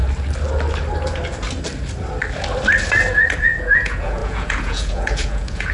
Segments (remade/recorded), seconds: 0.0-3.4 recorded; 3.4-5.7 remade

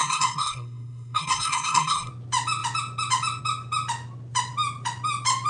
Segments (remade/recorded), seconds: 0.0-2.1 remade; 2.1-5.5 recorded

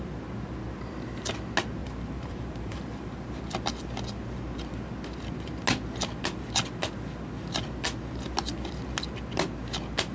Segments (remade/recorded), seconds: 0.0-1.8 recorded; 1.8-3.4 remade; 3.4-10.1 recorded

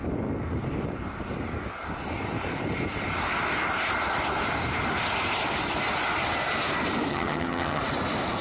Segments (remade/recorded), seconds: 0.0-7.1 recorded; 7.1-7.8 remade; 7.8-8.4 recorded

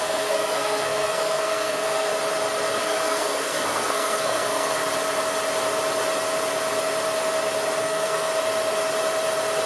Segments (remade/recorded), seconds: 0.0-2.1 remade; 2.1-2.8 recorded; 2.8-4.8 remade; 4.8-7.8 recorded; 7.8-8.3 remade; 8.3-9.7 recorded

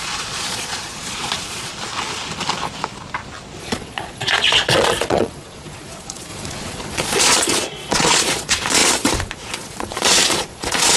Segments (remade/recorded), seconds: 0.0-1.7 remade; 1.7-3.6 recorded; 3.6-11.0 remade

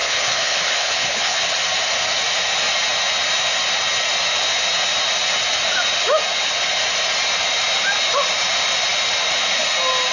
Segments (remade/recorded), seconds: 0.0-1.4 remade; 1.4-10.1 recorded